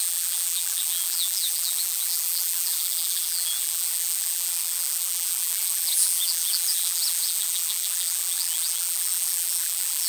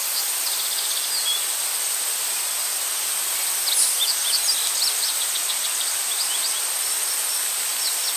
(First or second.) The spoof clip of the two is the first